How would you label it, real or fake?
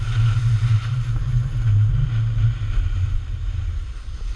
real